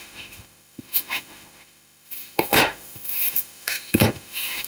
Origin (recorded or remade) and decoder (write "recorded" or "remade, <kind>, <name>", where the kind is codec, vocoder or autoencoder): remade, autoencoder, DAC-VAE